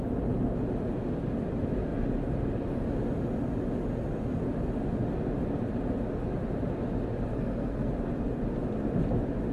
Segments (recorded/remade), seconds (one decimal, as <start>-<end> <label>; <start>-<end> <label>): 0.0-7.3 recorded; 7.3-7.9 remade; 7.9-9.5 recorded